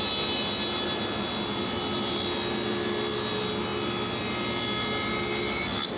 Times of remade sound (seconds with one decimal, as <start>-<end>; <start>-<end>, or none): none